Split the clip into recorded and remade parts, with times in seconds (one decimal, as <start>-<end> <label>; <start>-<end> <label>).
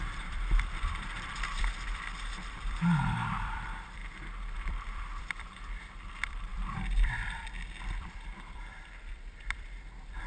0.0-4.0 remade; 4.0-4.6 recorded; 4.6-10.3 remade